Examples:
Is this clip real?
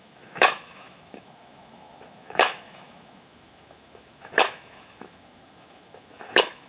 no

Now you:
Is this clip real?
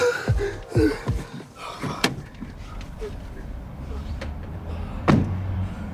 no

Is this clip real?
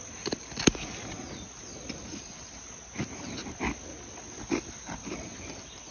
yes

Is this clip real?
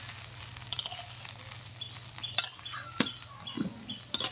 yes